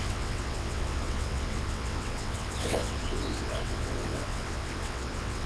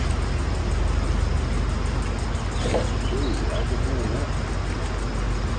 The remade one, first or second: first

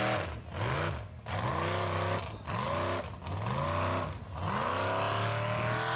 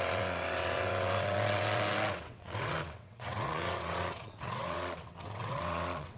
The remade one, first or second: second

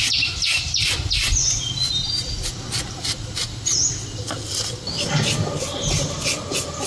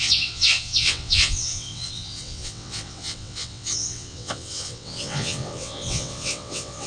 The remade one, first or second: second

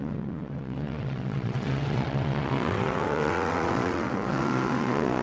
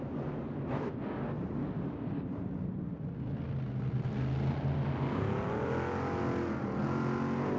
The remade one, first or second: first